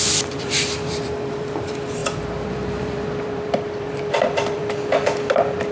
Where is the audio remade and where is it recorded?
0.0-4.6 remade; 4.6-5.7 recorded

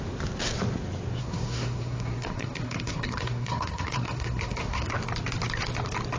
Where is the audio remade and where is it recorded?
0.0-1.2 recorded; 1.2-4.9 remade; 4.9-6.2 recorded

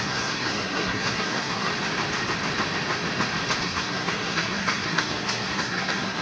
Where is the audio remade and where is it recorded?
0.0-1.7 remade; 1.7-3.6 recorded; 3.6-6.2 remade